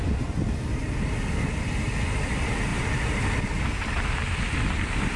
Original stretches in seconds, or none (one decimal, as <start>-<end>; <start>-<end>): 0.0-5.2